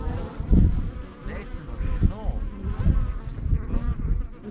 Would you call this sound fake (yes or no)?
no